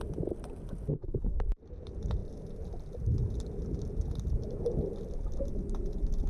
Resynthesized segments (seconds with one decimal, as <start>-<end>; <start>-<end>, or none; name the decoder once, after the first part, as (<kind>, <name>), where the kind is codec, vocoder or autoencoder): 0.9-1.4 (codec, DAC)